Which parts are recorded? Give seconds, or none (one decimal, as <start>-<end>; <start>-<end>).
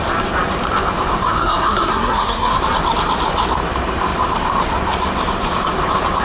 0.0-1.2; 2.5-6.2